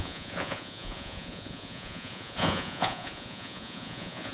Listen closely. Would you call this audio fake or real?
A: fake